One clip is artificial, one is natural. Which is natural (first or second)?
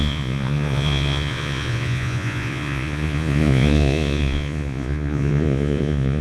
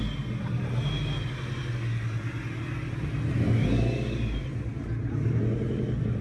second